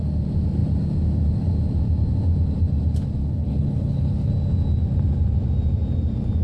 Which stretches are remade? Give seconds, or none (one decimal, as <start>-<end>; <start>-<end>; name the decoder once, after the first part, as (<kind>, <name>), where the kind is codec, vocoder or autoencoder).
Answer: 3.2-4.3 (codec, HILCodec)